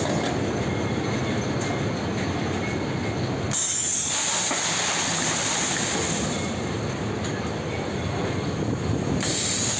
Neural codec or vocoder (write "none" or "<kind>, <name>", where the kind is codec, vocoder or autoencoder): none